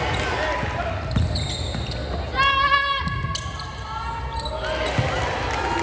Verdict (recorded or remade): recorded